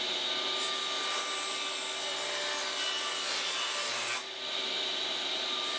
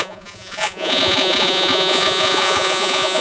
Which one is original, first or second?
first